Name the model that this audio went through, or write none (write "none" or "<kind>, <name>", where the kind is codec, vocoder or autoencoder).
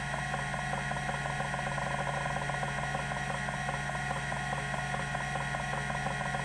none